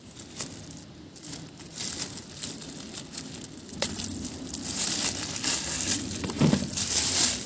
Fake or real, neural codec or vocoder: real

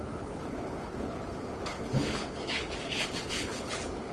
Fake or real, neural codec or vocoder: fake, codec, HILCodec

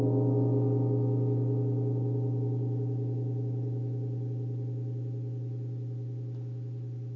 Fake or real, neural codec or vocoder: real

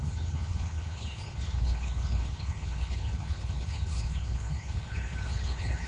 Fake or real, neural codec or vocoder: fake, codec, HILCodec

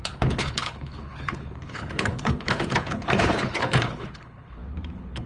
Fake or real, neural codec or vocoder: fake, codec, HILCodec